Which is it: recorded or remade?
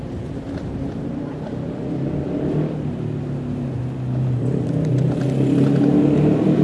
recorded